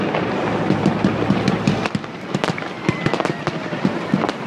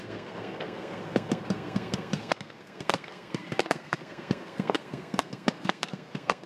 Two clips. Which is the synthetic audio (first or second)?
second